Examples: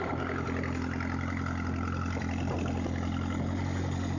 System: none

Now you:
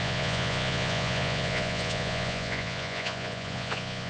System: vocoder, Vocos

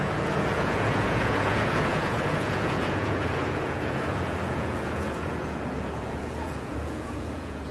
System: vocoder, Vocos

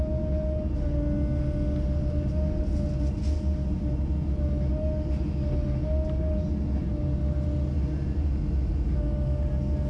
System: none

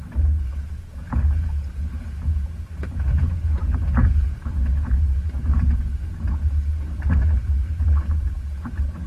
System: vocoder, Vocos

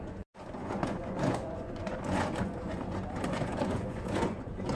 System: vocoder, Vocos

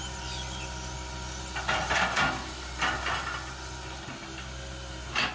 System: none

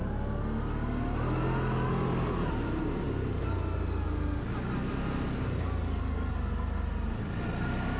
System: none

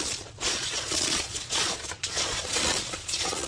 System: vocoder, Vocos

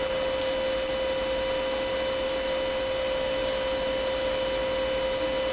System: none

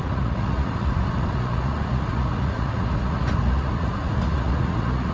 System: vocoder, Vocos